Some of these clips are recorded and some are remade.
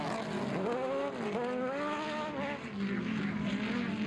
recorded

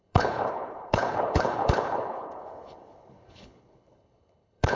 remade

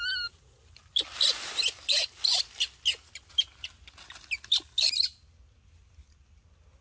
recorded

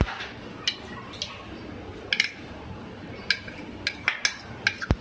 recorded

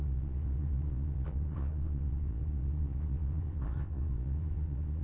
remade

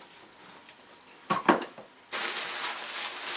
recorded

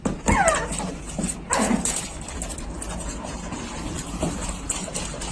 recorded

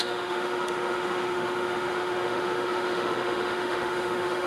remade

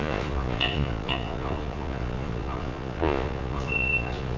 remade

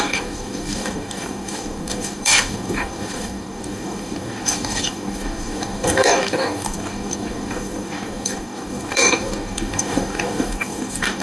remade